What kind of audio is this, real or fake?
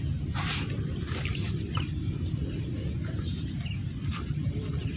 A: fake